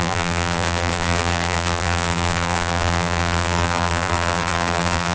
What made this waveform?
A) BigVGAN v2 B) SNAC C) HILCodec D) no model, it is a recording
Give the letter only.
A